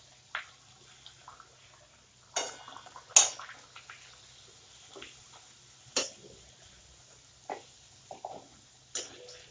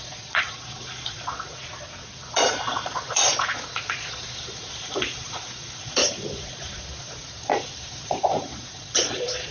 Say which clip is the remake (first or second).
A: second